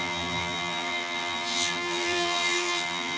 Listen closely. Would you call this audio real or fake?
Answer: fake